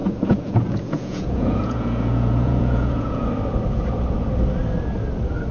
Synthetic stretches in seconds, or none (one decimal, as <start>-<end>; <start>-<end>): 0.0-3.3